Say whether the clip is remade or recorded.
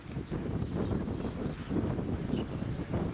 recorded